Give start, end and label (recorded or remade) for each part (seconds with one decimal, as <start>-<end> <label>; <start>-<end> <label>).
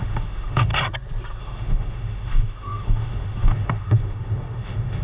0.0-0.7 remade; 0.7-1.4 recorded; 1.4-5.0 remade